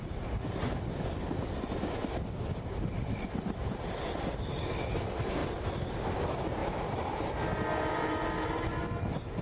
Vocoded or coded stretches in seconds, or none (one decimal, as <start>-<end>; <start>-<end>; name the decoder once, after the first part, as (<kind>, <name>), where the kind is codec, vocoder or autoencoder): none